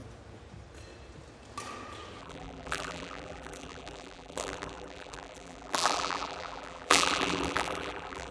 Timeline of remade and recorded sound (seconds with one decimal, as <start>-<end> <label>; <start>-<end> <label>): 0.0-2.2 recorded; 2.2-8.3 remade